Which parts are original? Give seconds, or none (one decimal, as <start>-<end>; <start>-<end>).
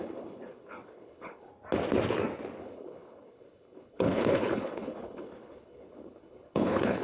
1.5-2.6